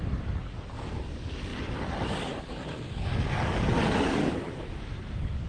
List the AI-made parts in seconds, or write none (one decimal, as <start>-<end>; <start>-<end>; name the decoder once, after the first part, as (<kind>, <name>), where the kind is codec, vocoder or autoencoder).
0.0-2.6 (codec, DAC); 3.3-4.2; 5.1-5.5